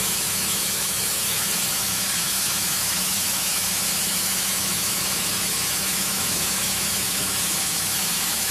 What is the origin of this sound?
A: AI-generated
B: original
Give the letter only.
A